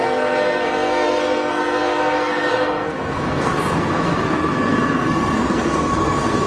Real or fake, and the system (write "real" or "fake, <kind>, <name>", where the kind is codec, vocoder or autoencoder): fake, codec, SNAC